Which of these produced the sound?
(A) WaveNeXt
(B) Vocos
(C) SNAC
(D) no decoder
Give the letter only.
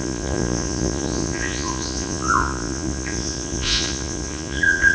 B